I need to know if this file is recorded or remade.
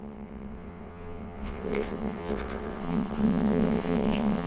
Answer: remade